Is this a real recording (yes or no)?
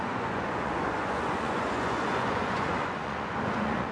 no